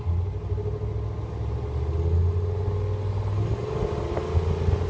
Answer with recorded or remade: recorded